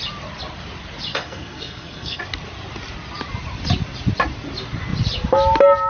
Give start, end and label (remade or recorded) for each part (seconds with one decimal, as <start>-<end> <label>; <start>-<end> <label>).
0.0-1.1 recorded; 1.1-2.2 remade; 2.2-5.9 recorded